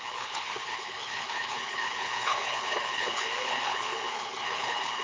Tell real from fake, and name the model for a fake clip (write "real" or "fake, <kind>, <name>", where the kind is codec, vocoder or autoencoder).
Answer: fake, codec, HILCodec